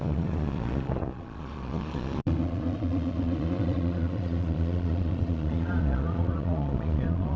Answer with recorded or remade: remade